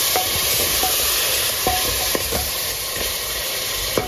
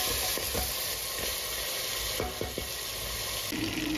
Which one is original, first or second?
second